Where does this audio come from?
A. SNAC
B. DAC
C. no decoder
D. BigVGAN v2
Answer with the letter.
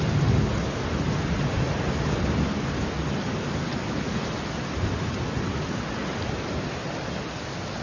C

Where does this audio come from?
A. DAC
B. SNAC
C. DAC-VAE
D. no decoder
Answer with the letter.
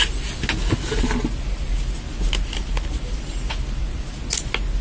D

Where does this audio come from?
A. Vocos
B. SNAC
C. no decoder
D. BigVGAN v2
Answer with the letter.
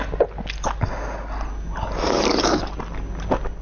C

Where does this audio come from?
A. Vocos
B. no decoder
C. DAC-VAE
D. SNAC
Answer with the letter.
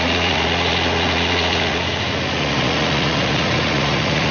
A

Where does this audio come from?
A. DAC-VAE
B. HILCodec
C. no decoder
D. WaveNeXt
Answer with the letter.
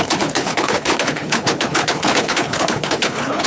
B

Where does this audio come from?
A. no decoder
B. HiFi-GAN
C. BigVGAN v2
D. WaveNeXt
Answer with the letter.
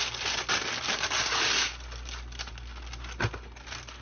A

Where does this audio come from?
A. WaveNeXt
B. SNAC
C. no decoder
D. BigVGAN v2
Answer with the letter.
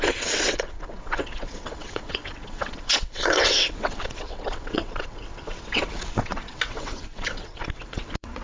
A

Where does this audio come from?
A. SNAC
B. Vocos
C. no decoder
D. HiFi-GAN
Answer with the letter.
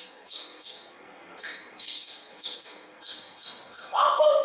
A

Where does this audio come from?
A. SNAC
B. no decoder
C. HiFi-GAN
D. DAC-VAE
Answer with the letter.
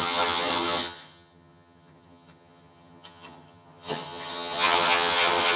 C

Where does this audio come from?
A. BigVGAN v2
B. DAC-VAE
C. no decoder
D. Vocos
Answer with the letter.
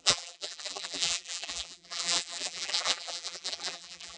A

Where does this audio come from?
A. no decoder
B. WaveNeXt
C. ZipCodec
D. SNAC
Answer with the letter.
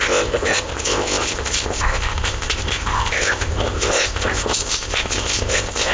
C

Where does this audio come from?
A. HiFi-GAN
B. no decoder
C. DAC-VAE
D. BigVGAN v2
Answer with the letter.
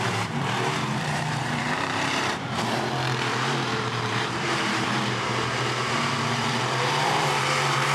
D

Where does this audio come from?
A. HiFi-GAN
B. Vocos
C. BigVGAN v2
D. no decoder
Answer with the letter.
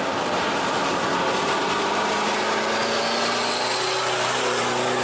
D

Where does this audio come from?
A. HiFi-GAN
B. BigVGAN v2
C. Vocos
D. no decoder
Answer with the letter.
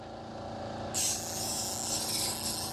D